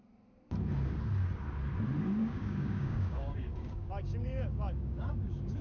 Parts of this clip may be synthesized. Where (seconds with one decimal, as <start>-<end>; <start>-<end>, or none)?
2.2-5.6